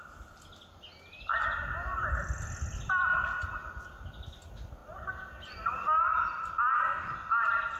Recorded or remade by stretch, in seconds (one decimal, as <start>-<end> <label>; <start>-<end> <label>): 0.0-7.8 recorded